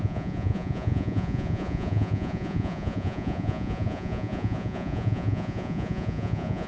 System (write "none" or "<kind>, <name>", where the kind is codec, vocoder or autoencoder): vocoder, Vocos